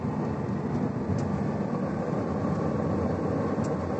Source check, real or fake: real